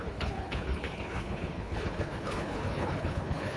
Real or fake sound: fake